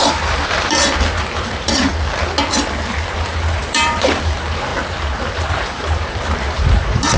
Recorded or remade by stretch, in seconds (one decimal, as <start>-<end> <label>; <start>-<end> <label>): 0.0-1.9 remade; 1.9-3.3 recorded; 3.3-4.7 remade; 4.7-5.3 recorded; 5.3-7.2 remade